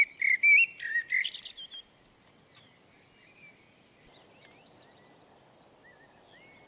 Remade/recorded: recorded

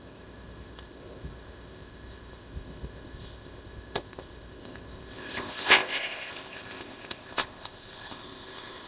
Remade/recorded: remade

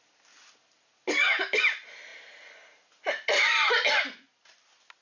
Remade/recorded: recorded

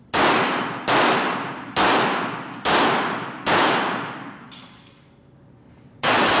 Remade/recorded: recorded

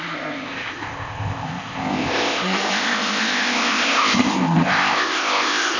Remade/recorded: remade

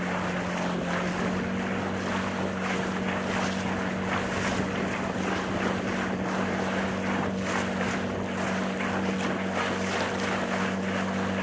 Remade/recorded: recorded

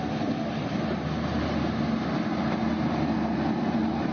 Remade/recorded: recorded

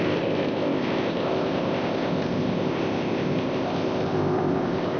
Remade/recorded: remade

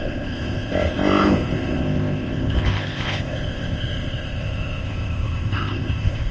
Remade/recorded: remade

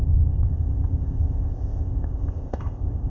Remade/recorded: remade